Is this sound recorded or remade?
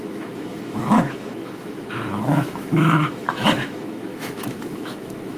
remade